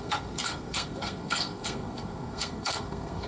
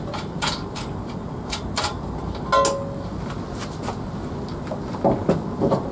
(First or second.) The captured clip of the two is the second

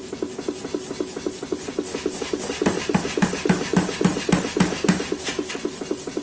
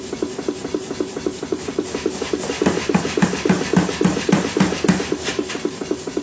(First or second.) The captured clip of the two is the first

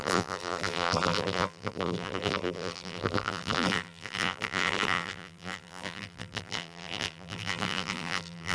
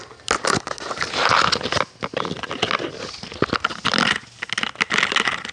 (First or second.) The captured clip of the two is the second